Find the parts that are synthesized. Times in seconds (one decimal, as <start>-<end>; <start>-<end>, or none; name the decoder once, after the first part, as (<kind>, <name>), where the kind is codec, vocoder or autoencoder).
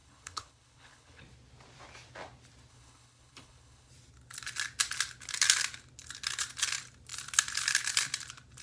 0.0-1.2 (codec, HILCodec); 2.7-3.9